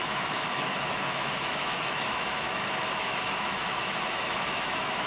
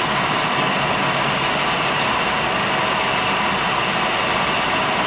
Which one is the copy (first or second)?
first